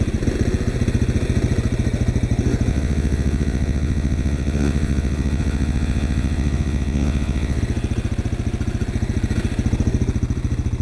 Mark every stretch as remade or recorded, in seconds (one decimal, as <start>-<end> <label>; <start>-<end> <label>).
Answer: 0.0-2.7 recorded; 2.7-7.6 remade; 7.6-10.8 recorded